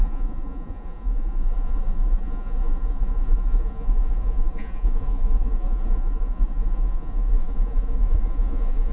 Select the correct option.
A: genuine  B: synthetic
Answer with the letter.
B